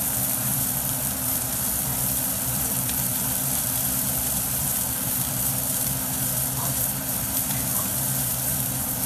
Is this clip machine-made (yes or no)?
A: yes